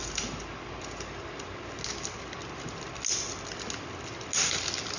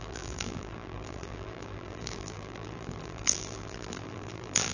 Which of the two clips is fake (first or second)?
second